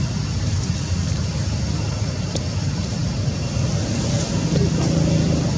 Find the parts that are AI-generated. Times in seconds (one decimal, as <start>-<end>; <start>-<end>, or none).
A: none